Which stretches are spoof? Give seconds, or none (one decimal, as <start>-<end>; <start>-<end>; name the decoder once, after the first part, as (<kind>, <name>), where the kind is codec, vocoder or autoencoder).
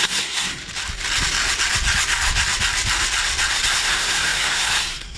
0.0-0.6 (codec, SNAC); 3.7-5.2